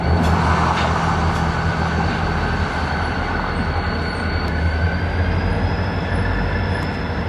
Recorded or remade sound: recorded